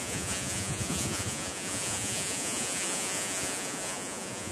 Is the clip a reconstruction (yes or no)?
yes